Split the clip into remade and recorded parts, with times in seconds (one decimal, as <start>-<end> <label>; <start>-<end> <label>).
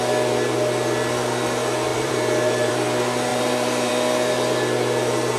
0.0-1.9 recorded; 1.9-2.7 remade; 2.7-3.3 recorded; 3.3-3.9 remade; 3.9-5.4 recorded